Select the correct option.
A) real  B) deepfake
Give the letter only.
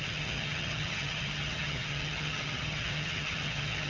B